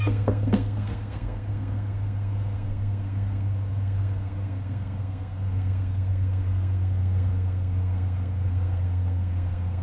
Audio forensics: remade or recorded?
remade